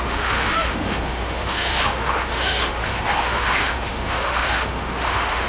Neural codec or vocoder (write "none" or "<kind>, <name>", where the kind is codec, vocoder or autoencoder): autoencoder, DAC-VAE